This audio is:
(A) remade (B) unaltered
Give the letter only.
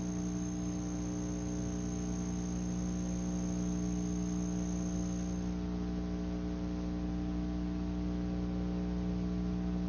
B